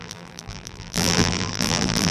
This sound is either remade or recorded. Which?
remade